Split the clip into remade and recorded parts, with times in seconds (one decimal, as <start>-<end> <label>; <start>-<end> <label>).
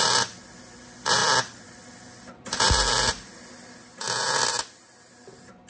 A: 0.0-5.7 recorded